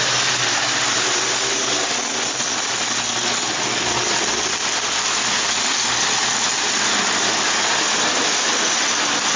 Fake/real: real